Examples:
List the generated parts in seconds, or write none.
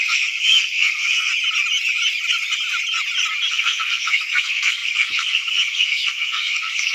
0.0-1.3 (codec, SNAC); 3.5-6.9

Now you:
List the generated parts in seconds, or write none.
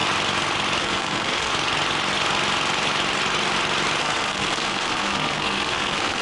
0.8-1.5 (codec, SNAC); 4.0-6.2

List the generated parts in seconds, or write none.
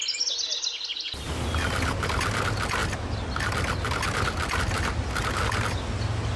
none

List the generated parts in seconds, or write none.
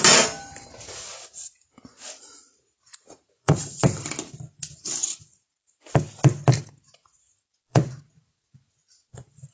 2.9-3.8 (vocoder, Vocos); 7.7-9.5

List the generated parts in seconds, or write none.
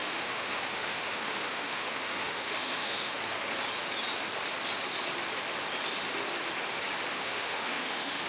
0.0-3.2 (autoencoder, DAC-VAE); 7.1-8.3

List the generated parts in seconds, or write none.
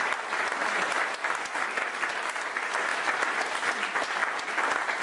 none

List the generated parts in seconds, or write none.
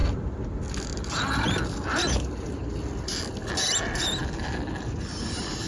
none